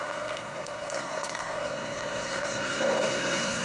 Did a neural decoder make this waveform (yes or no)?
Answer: yes